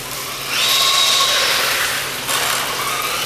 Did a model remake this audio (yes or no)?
no